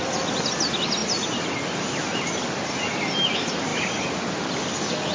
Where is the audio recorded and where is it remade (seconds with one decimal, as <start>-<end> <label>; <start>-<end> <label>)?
0.0-5.1 recorded